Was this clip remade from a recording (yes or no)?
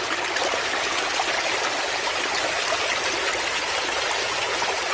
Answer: no